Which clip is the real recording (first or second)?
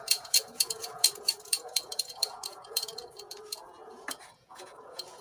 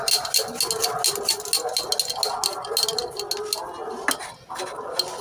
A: second